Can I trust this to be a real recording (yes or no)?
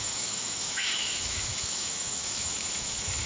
no